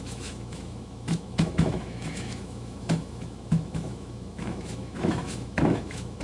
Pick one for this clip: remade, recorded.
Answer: remade